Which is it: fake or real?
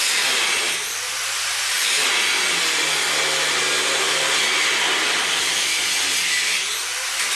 real